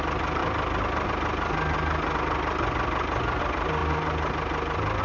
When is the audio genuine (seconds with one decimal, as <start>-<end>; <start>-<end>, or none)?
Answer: 0.0-5.0